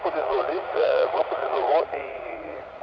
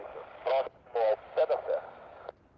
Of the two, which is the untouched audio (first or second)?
second